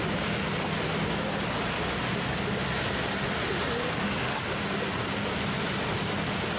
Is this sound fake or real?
real